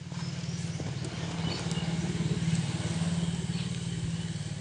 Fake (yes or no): no